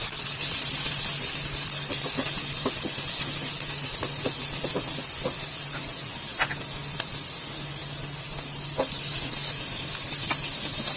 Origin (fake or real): real